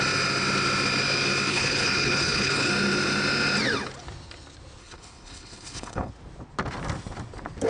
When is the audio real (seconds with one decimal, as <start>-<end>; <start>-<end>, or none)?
0.0-1.5; 2.7-4.8; 6.1-7.7